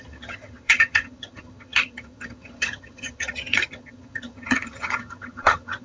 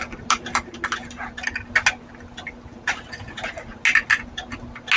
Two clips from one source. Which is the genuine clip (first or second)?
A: second